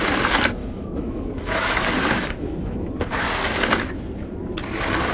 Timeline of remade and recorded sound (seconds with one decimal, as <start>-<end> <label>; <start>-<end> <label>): 0.0-0.6 recorded; 0.6-2.9 remade; 2.9-5.1 recorded